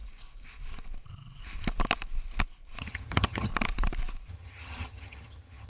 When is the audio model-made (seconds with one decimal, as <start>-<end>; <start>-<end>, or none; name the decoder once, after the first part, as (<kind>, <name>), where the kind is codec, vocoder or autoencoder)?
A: 2.8-3.5 (vocoder, HiFi-GAN); 4.3-5.7